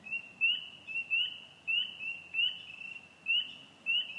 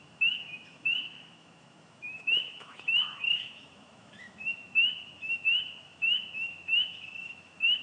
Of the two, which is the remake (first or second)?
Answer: second